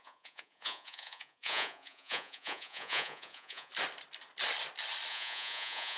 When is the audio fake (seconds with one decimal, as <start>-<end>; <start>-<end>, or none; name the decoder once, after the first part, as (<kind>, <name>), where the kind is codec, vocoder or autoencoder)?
0.0-3.7 (vocoder, Vocos); 5.1-6.0